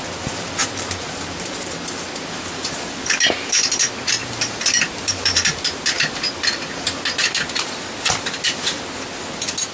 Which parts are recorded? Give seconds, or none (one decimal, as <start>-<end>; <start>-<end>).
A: 0.0-0.6; 1.9-4.2; 5.6-9.7